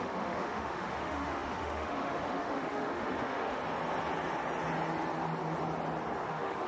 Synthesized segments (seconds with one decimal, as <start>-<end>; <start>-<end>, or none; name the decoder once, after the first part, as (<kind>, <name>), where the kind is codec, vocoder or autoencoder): 0.0-3.6 (autoencoder, DAC-VAE); 6.3-6.7